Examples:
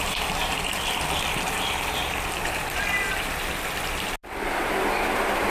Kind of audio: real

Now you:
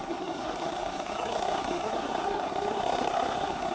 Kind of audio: fake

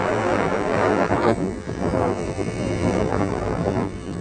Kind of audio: fake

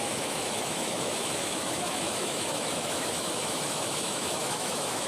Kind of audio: fake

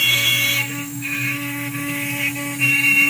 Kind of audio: fake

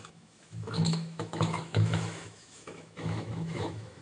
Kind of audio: fake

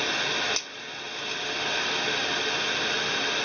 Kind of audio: real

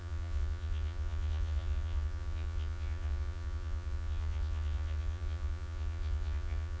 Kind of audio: fake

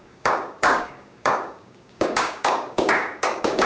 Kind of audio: fake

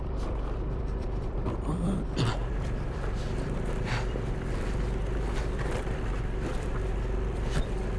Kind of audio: fake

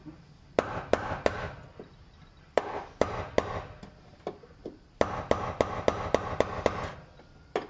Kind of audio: real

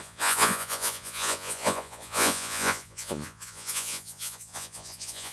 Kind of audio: fake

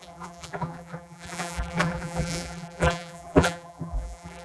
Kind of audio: fake